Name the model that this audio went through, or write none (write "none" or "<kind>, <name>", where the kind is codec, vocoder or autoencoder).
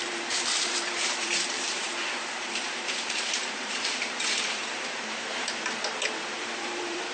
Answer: vocoder, BigVGAN v2